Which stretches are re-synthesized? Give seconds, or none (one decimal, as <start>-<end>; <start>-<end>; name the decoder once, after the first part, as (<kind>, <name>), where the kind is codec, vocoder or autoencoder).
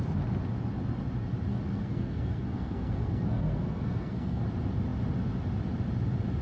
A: 1.5-4.4 (codec, SNAC)